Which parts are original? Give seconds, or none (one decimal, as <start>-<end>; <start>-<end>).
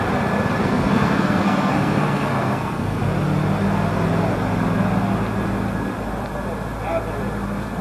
0.0-0.6; 3.0-7.8